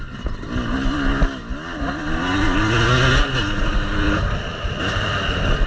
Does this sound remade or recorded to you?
recorded